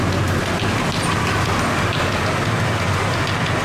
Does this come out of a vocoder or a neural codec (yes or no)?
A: no